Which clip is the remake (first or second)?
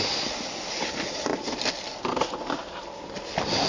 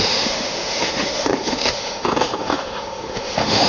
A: second